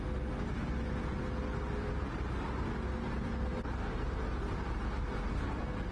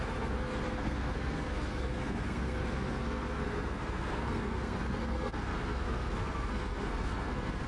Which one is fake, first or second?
second